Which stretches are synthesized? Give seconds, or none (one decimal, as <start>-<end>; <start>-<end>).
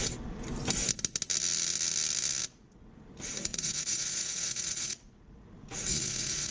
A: 3.5-6.5